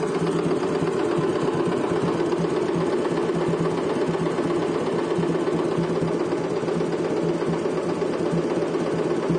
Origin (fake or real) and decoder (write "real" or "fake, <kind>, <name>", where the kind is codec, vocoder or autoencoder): real